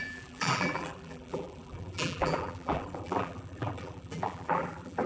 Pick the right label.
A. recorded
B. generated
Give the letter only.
B